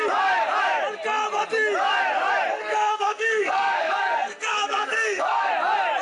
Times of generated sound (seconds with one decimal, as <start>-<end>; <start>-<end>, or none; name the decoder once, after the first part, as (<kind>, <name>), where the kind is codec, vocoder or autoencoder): 2.5-5.5 (codec, SNAC)